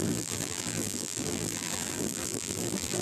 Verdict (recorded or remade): remade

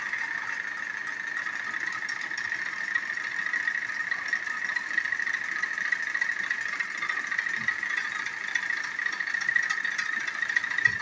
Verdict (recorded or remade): recorded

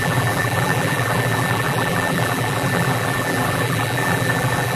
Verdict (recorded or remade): remade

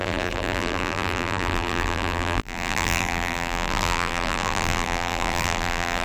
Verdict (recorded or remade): remade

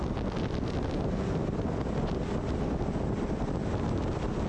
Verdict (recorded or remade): recorded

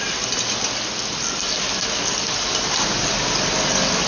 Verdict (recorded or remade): recorded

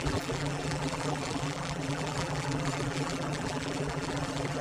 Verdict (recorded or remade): remade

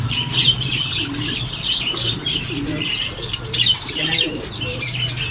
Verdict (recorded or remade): remade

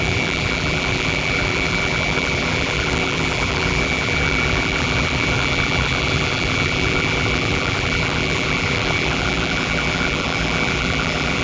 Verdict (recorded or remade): remade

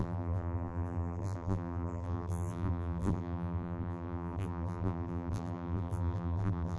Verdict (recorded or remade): remade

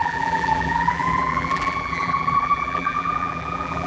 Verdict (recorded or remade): remade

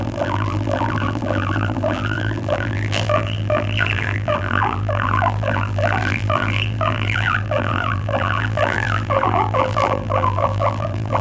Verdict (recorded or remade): remade